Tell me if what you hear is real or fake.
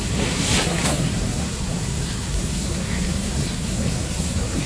fake